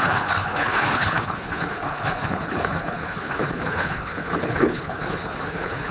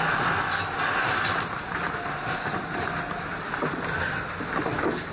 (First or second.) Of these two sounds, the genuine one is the second